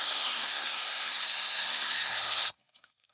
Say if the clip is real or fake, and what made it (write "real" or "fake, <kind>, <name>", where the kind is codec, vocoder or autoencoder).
fake, codec, SNAC